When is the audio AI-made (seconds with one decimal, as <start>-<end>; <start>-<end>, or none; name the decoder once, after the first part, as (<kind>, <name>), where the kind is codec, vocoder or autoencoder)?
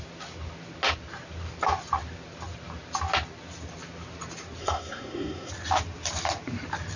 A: 4.6-5.5 (codec, SNAC)